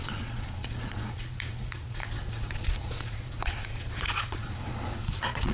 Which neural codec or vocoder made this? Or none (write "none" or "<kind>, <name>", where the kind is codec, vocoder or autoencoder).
vocoder, Vocos